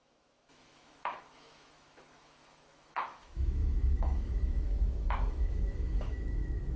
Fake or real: fake